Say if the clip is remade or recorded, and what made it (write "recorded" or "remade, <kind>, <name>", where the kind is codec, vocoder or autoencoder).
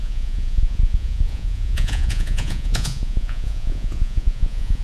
remade, vocoder, Vocos